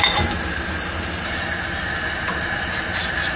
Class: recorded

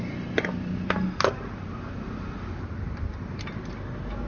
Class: recorded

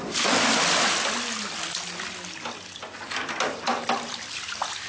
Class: recorded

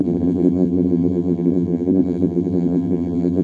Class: remade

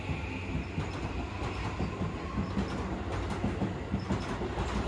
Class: recorded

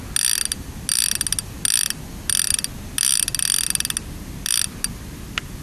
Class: recorded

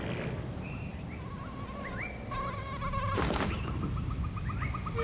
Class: recorded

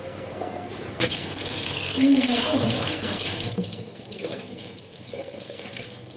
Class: remade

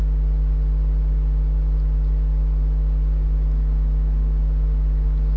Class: recorded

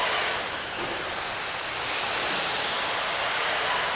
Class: recorded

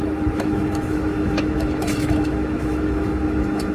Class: remade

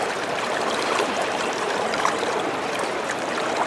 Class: remade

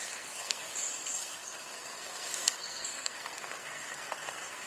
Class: remade